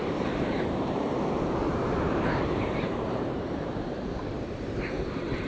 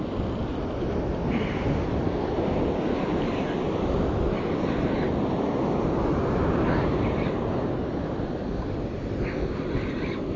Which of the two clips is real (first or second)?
second